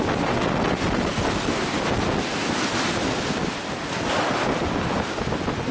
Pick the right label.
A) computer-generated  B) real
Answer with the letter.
B